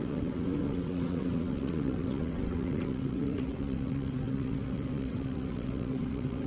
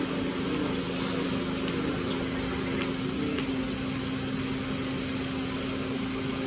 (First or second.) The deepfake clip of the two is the first